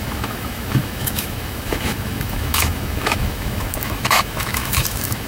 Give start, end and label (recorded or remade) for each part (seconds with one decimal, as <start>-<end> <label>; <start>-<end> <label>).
0.0-5.3 remade

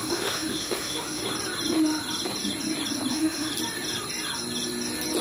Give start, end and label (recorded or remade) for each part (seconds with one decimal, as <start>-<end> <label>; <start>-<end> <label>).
0.0-1.2 remade; 1.2-3.1 recorded; 3.1-3.5 remade; 3.5-5.2 recorded

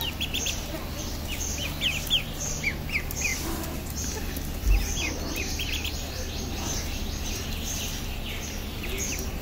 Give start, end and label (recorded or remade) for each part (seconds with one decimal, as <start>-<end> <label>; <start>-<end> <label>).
0.0-9.4 recorded

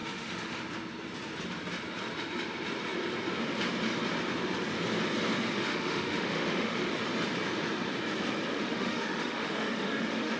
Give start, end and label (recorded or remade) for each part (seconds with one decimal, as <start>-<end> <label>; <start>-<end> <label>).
0.0-0.6 remade; 0.6-5.7 recorded; 5.7-6.9 remade; 6.9-8.5 recorded; 8.5-10.4 remade

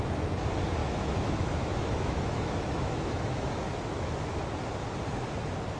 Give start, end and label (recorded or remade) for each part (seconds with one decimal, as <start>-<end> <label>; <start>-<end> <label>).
0.0-0.8 recorded; 0.8-4.3 remade; 4.3-5.8 recorded